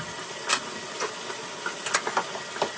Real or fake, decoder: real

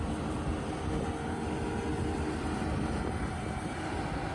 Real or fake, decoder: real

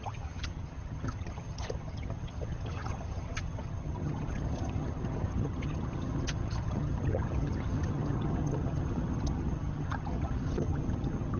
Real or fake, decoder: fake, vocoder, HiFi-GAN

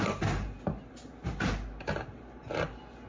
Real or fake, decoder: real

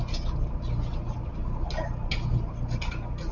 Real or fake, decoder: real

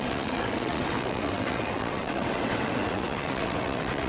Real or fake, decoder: fake, vocoder, WaveNeXt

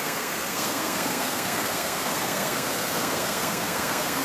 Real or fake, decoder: fake, codec, SNAC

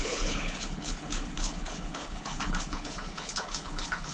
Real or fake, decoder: fake, codec, HILCodec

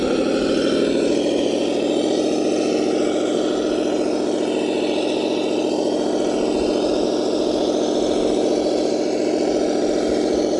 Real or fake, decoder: real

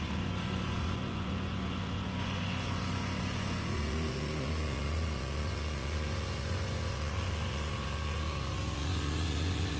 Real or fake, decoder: fake, vocoder, Vocos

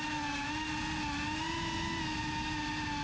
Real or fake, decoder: real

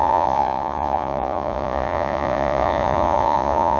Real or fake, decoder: fake, vocoder, Vocos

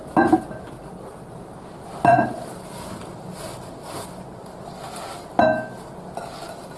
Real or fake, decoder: real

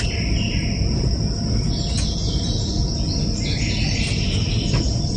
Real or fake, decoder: real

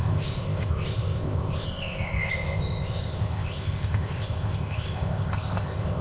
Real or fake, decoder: fake, codec, ZipCodec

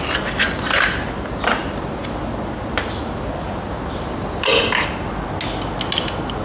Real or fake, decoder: real